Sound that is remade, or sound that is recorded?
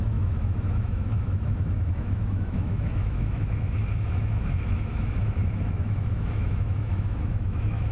remade